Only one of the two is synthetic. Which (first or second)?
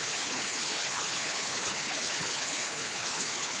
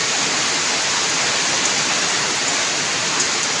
first